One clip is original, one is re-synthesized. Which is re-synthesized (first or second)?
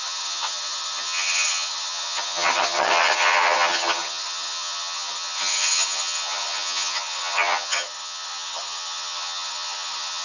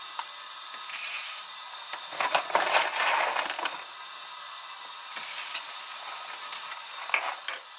first